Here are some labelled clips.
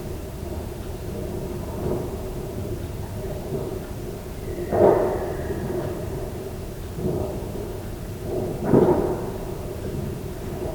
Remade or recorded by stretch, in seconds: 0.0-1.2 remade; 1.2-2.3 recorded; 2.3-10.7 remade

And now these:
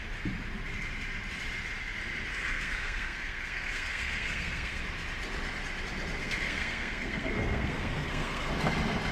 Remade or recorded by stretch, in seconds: 0.0-2.3 recorded; 2.3-4.8 remade; 4.8-6.2 recorded; 6.2-8.5 remade; 8.5-9.1 recorded